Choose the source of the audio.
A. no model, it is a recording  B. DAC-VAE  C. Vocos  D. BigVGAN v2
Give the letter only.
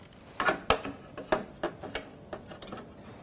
A